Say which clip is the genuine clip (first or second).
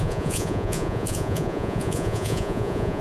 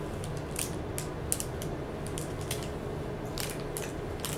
second